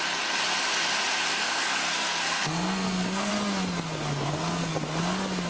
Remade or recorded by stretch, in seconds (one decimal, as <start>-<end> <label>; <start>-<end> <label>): 0.0-1.3 recorded; 1.3-3.3 remade; 3.3-4.3 recorded; 4.3-4.8 remade; 4.8-5.5 recorded